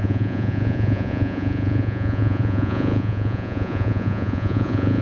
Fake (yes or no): yes